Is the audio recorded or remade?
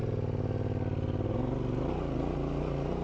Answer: recorded